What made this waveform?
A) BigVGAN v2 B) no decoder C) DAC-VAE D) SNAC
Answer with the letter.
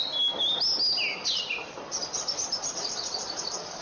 B